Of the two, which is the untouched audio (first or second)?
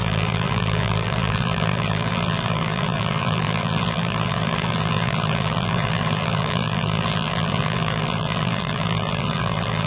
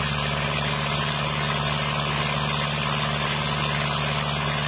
second